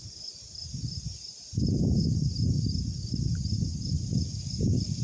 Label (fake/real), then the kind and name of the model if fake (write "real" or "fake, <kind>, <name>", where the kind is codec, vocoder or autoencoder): real